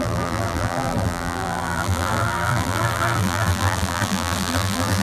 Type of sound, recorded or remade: remade